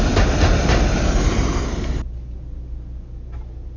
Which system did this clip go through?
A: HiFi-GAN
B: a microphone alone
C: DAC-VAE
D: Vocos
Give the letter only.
B